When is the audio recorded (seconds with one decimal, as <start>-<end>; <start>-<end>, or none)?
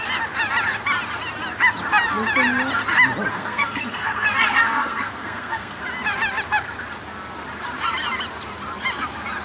0.0-3.3; 5.8-9.4